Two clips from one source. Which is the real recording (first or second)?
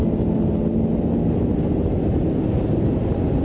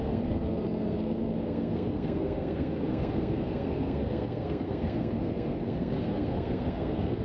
first